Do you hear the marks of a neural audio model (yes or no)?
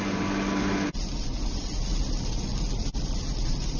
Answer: no